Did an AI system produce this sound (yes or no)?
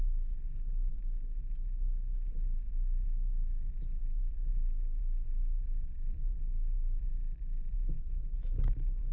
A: yes